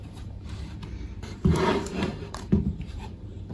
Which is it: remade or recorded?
remade